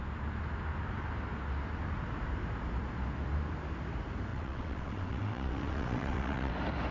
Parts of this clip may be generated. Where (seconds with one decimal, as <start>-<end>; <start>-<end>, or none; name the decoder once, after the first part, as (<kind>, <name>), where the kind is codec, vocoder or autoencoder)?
4.3-6.5 (vocoder, WaveNeXt)